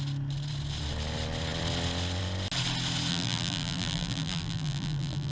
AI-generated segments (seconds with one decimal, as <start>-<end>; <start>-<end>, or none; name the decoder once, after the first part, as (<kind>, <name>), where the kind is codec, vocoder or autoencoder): 3.1-5.3 (vocoder, BigVGAN v2)